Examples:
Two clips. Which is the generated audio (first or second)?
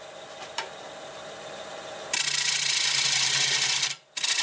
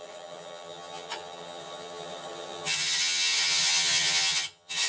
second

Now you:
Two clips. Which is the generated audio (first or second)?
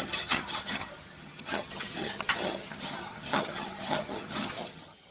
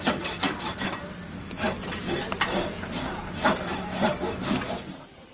first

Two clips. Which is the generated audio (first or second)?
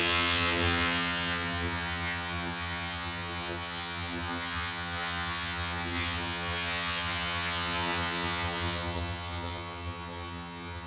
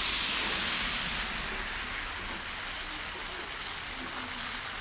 first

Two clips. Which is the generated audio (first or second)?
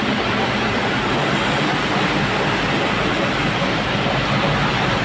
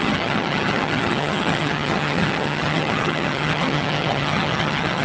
second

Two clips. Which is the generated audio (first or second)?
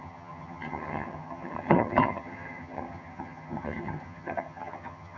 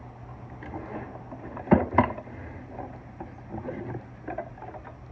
first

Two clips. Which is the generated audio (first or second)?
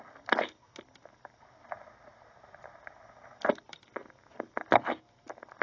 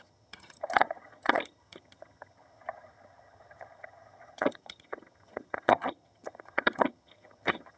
second